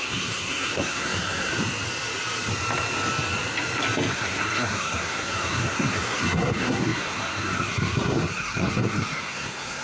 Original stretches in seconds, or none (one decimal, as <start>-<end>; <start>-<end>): 1.5-4.1

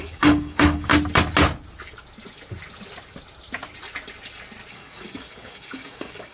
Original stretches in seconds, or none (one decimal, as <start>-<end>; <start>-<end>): 0.9-4.7

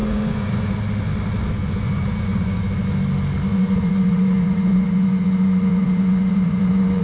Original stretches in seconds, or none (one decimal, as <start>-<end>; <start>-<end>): 0.7-1.6; 2.6-3.5